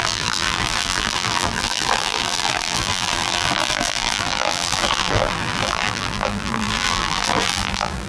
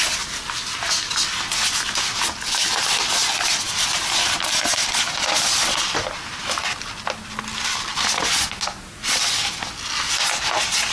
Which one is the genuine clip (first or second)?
second